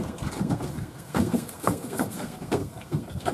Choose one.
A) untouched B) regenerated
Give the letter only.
B